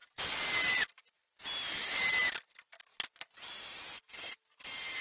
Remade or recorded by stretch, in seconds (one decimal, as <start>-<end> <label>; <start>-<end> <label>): 0.0-5.0 recorded